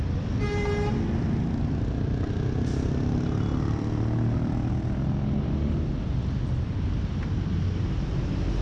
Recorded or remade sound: recorded